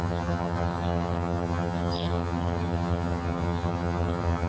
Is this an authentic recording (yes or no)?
no